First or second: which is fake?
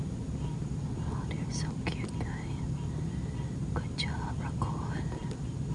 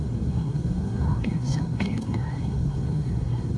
second